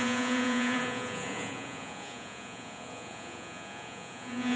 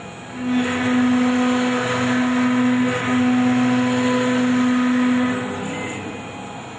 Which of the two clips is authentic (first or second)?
second